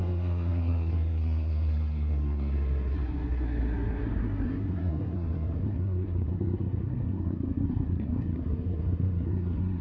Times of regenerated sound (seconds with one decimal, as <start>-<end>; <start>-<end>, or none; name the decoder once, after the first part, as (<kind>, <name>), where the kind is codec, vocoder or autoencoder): 0.0-9.8 (codec, SNAC)